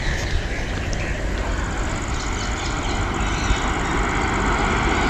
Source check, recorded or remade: recorded